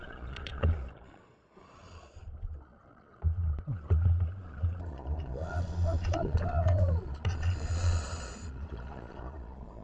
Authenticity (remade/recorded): remade